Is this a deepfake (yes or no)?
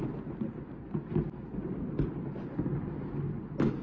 no